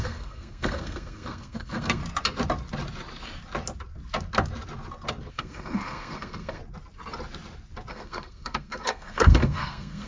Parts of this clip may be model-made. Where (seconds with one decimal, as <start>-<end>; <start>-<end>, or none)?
0.0-2.0; 5.3-6.6; 7.9-10.1